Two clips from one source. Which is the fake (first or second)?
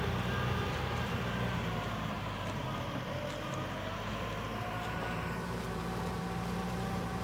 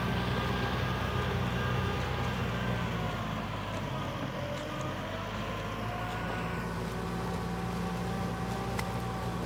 first